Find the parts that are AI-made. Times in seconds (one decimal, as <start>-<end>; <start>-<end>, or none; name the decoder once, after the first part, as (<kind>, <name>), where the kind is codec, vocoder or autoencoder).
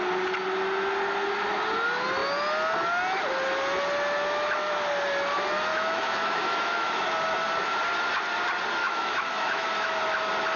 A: 5.7-7.0 (autoencoder, DAC-VAE); 8.8-10.0